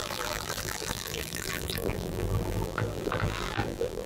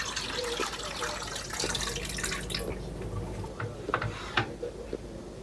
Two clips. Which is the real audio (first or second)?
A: second